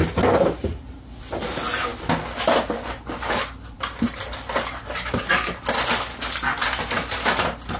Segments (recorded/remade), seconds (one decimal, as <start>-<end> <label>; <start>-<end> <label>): 0.0-7.8 recorded